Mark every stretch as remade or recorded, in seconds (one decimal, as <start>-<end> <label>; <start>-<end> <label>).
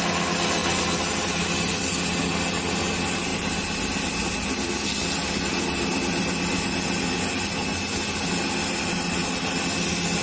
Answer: 0.0-10.2 recorded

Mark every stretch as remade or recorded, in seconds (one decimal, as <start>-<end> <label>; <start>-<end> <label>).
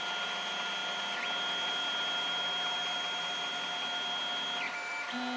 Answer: 0.0-5.4 recorded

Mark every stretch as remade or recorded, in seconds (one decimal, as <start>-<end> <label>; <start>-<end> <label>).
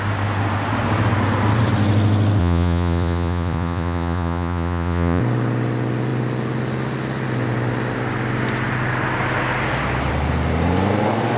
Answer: 0.0-2.4 recorded; 2.4-5.2 remade; 5.2-11.4 recorded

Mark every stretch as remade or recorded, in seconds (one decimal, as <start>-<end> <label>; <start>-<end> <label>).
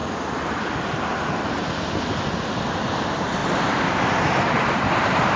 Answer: 0.0-3.4 recorded; 3.4-5.4 remade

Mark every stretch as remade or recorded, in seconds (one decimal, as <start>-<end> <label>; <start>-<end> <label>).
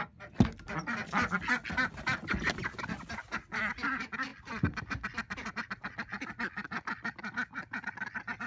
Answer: 0.0-8.5 recorded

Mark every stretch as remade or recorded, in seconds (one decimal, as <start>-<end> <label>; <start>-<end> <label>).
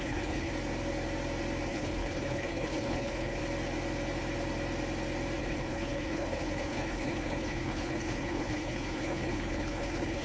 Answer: 0.0-0.5 remade; 0.5-1.7 recorded; 1.7-3.4 remade; 3.4-5.4 recorded; 5.4-10.2 remade